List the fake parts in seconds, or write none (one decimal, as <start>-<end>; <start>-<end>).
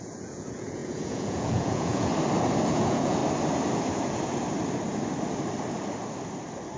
0.0-2.1; 2.7-3.2